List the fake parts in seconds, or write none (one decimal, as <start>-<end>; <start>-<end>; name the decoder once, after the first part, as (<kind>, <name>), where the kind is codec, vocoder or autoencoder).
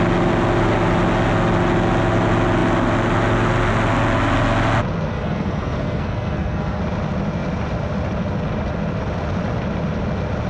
5.1-6.8 (codec, SNAC)